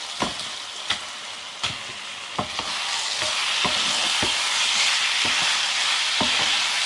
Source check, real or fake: real